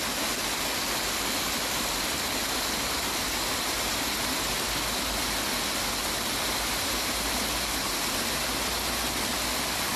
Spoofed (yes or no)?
no